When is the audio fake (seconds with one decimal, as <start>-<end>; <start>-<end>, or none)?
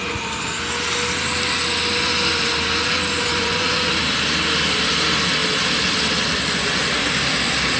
3.3-3.9; 6.4-7.0